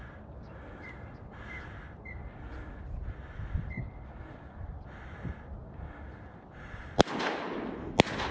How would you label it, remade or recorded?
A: recorded